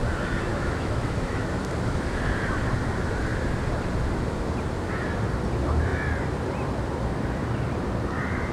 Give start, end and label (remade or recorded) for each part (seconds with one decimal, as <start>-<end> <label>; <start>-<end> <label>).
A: 0.0-0.5 recorded; 0.5-1.5 remade; 1.5-8.5 recorded